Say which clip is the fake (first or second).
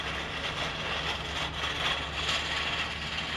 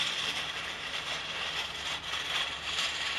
second